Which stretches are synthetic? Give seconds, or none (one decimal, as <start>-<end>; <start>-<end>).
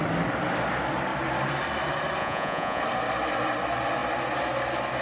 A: 2.2-2.8